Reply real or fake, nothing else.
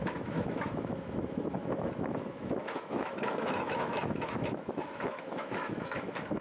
fake